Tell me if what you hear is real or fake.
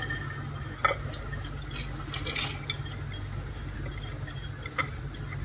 real